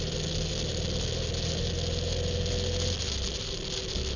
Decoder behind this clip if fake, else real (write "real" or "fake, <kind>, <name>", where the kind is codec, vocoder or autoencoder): real